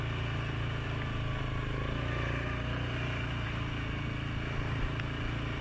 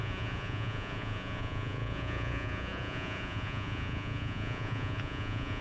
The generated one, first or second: second